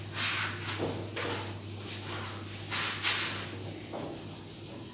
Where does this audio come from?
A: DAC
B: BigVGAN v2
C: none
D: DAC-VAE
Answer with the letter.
C